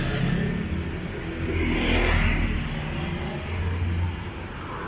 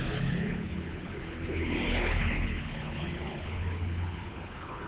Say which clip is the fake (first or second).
second